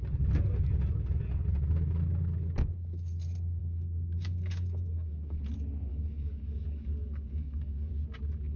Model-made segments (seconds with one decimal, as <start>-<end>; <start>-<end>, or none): 3.6-5.4; 5.9-7.9